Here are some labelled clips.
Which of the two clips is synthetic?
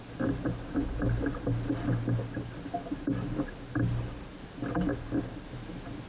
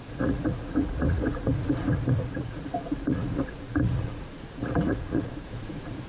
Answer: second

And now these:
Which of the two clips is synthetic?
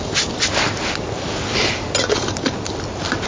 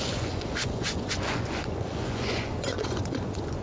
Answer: second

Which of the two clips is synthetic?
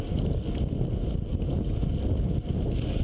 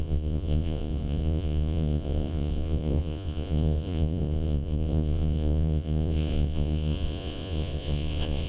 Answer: second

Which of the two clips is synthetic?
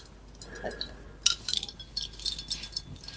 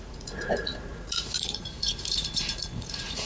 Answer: second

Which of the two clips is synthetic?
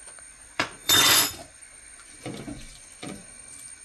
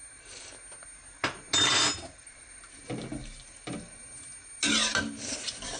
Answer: first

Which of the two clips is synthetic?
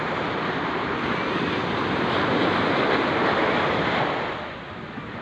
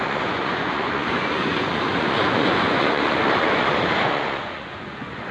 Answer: second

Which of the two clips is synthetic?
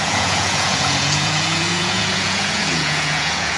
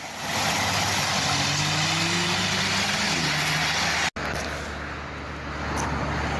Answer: first